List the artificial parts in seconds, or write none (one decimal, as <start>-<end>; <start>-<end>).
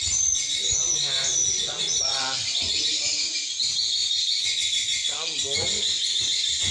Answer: 1.2-2.8; 4.0-6.2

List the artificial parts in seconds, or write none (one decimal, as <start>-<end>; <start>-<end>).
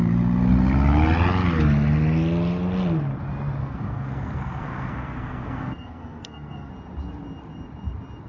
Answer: 3.6-6.7